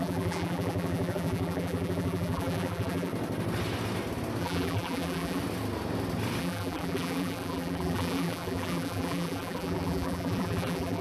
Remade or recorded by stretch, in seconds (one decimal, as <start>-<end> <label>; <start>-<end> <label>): 0.0-3.1 remade; 3.1-4.4 recorded; 4.4-5.4 remade; 5.4-6.4 recorded; 6.4-11.0 remade